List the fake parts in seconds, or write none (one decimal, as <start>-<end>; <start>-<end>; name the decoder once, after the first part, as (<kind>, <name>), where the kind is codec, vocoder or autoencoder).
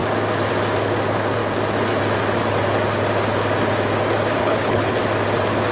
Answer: 4.4-5.0 (codec, HILCodec)